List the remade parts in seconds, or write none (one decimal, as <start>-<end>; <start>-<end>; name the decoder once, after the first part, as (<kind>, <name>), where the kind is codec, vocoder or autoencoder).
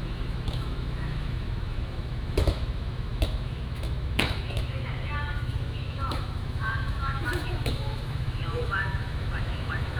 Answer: 0.0-10.0 (autoencoder, DAC-VAE)